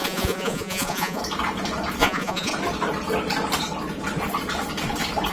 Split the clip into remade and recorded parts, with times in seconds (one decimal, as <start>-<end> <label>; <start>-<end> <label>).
0.0-1.2 remade; 1.2-2.0 recorded; 2.0-2.5 remade; 2.5-5.3 recorded